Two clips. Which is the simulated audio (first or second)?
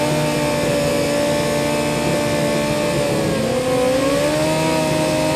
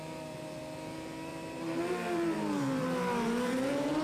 second